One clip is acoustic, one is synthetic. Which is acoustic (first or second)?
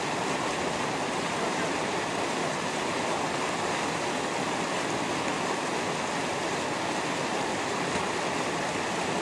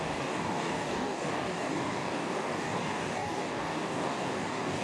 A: first